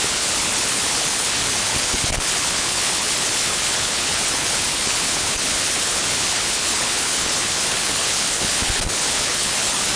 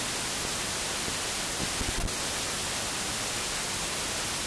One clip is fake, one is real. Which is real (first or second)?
second